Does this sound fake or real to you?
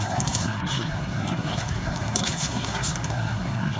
fake